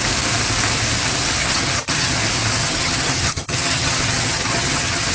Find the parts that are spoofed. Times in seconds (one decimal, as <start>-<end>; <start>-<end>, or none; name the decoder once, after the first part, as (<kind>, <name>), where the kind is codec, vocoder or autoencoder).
1.4-2.2 (vocoder, HiFi-GAN); 2.6-5.1